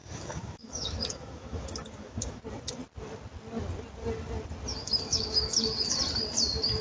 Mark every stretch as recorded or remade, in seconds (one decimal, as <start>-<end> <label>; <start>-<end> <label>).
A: 0.0-2.4 remade; 2.4-4.7 recorded; 4.7-6.0 remade; 6.0-6.8 recorded